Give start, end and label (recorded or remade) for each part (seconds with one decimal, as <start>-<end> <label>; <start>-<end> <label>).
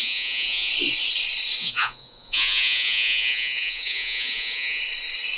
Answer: 0.0-0.7 remade; 0.7-1.6 recorded; 1.6-4.8 remade; 4.8-5.4 recorded